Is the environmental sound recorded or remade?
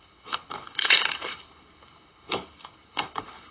remade